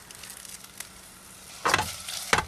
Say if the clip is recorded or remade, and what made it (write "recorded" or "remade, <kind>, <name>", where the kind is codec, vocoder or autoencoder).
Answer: recorded